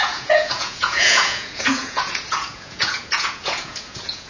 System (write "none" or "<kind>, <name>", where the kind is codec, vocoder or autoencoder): vocoder, Vocos